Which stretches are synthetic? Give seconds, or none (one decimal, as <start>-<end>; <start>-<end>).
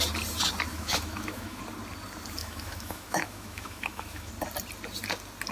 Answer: 0.7-1.6; 2.4-4.3